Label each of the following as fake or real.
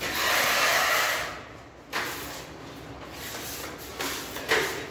real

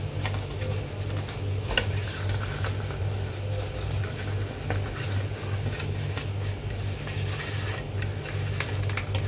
real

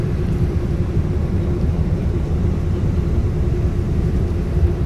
fake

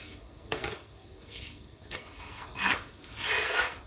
fake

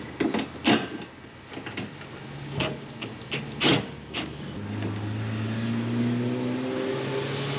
real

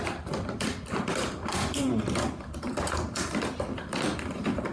fake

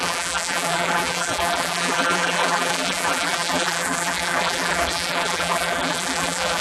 fake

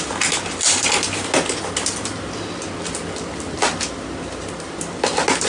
real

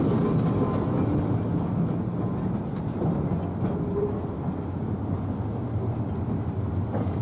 real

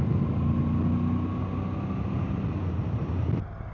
real